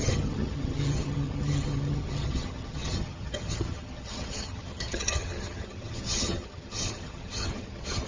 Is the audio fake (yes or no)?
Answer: yes